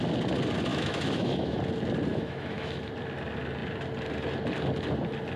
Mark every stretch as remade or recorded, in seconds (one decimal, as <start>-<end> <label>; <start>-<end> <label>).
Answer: 0.0-0.7 recorded; 0.7-1.6 remade; 1.6-2.1 recorded; 2.1-2.8 remade; 2.8-5.4 recorded